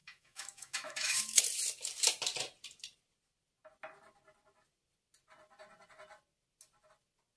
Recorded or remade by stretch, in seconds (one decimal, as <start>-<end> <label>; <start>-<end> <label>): 0.0-1.4 remade; 1.4-7.4 recorded